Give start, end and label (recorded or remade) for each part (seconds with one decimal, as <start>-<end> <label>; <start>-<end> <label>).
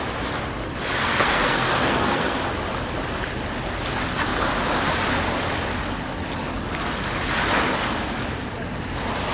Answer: 0.0-1.0 recorded; 1.0-2.4 remade; 2.4-9.3 recorded